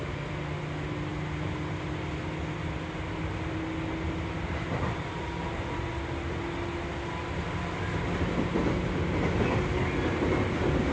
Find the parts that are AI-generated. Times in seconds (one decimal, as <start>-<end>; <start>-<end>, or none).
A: none